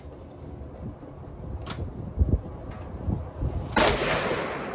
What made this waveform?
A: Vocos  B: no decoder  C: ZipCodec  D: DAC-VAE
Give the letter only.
B